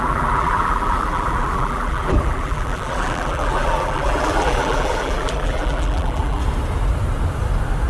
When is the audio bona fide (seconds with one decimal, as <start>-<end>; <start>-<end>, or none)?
6.4-7.9

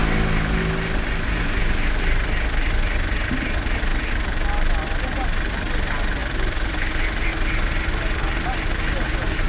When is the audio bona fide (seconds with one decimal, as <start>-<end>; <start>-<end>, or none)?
0.0-9.5

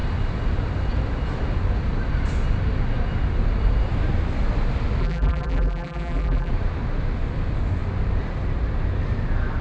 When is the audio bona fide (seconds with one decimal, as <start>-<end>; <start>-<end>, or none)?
0.0-5.0; 6.5-9.6

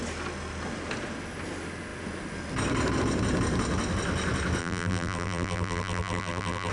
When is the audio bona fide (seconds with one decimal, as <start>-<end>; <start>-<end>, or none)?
0.0-4.6